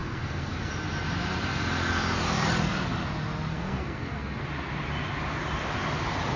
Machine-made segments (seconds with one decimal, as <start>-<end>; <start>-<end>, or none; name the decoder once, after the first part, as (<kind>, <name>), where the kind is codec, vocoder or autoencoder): 0.0-0.7 (codec, SNAC); 3.5-4.4